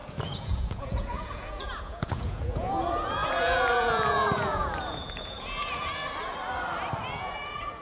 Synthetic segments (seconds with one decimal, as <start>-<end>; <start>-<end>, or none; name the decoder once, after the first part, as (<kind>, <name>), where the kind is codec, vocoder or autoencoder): 0.0-6.0 (vocoder, Vocos); 7.0-7.8